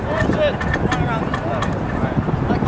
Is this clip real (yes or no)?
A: yes